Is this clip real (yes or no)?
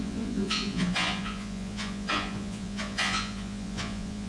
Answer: no